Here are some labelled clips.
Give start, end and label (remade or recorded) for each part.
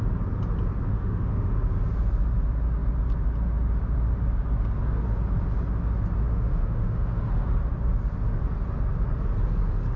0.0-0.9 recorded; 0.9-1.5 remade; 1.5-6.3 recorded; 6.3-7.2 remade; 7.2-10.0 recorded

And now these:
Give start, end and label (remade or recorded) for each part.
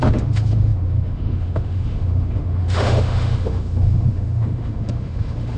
0.0-5.6 remade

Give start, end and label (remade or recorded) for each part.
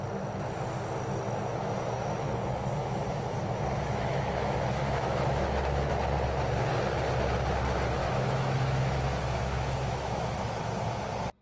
0.0-1.6 recorded; 1.6-2.3 remade; 2.3-2.8 recorded; 2.8-5.9 remade; 5.9-8.0 recorded; 8.0-10.4 remade; 10.4-11.4 recorded